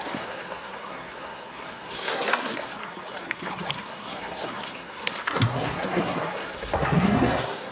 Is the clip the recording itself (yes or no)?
no